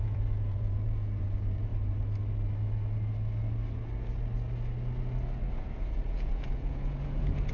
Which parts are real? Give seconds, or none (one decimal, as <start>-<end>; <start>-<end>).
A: 1.7-5.5